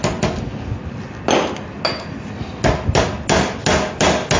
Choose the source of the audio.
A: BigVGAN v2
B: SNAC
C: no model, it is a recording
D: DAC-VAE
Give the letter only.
C